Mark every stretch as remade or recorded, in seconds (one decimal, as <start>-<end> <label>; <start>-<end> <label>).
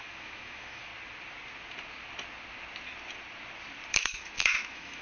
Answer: 0.0-0.9 remade; 0.9-3.9 recorded; 3.9-5.0 remade